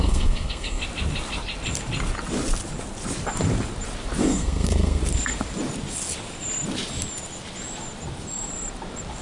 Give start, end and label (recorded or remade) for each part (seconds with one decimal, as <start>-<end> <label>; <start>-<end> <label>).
0.0-0.8 remade; 0.8-4.2 recorded; 4.2-5.0 remade; 5.0-9.2 recorded

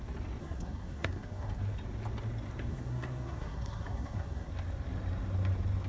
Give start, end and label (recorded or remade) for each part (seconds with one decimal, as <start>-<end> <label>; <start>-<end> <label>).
0.0-0.4 recorded; 0.4-1.6 remade; 1.6-2.7 recorded; 2.7-4.5 remade; 4.5-5.9 recorded

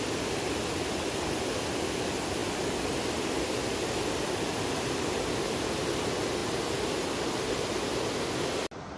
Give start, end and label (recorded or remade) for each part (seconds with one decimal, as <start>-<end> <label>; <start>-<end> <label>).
0.0-9.0 recorded

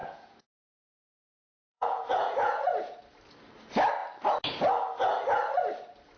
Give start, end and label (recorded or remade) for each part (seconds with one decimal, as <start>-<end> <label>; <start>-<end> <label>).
0.0-3.0 remade; 3.0-6.2 recorded